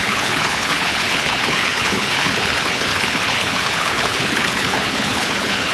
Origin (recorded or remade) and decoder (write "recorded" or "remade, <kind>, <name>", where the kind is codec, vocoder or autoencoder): remade, codec, HILCodec